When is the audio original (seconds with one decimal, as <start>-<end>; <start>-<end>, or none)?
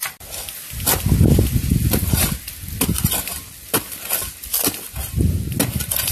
0.0-6.1